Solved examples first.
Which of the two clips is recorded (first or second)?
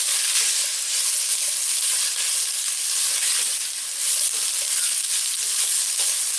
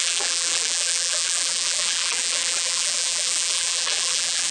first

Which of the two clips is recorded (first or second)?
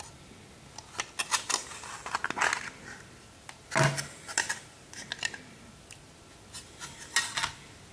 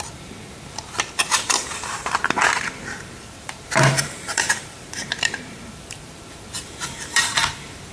first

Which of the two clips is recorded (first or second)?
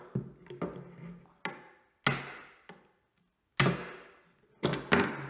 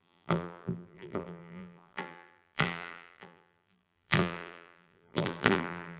first